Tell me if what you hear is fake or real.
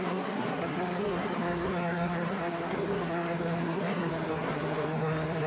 fake